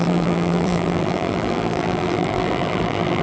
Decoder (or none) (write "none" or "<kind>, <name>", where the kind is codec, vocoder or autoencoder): vocoder, BigVGAN v2